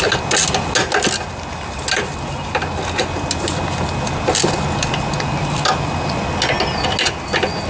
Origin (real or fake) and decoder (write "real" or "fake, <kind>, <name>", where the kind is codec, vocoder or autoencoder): real